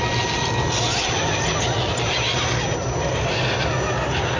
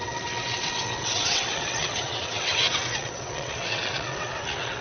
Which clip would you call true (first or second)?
first